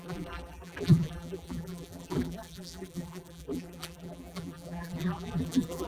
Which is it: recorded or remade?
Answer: remade